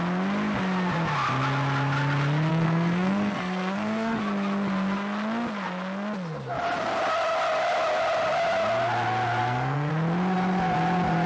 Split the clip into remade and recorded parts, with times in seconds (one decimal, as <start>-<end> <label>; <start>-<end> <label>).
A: 0.0-2.5 recorded; 2.5-4.2 remade; 4.2-9.4 recorded; 9.4-9.9 remade; 9.9-11.3 recorded